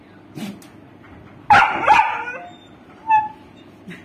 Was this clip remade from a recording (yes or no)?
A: no